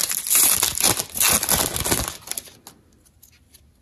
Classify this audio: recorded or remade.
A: recorded